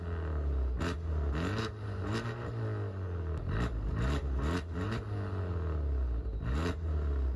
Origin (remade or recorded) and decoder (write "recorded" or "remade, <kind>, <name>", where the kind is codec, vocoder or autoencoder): recorded